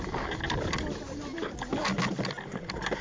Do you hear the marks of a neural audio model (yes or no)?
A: no